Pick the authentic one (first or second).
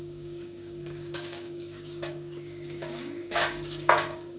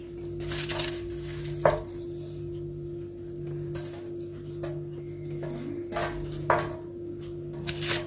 second